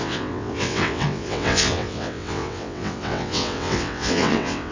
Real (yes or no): no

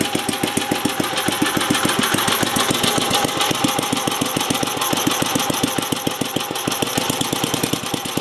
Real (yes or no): yes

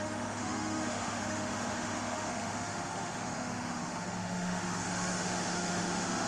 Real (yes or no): no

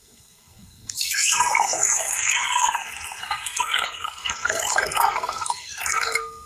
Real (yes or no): no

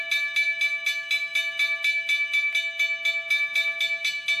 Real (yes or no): yes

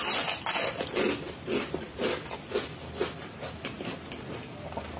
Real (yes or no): yes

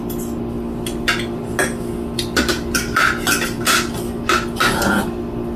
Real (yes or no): yes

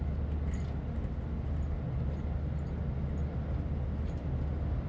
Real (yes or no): yes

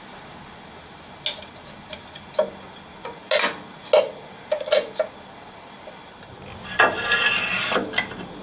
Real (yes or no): yes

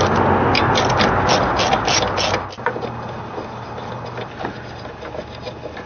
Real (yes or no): yes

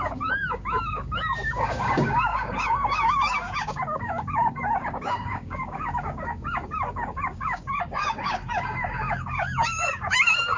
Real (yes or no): no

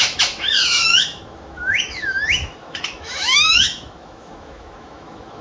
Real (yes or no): no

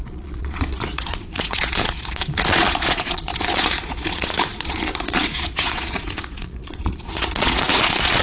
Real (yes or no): no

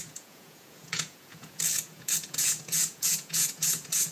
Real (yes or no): no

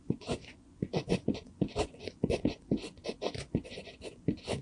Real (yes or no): no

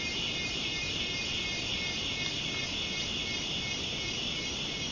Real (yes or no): yes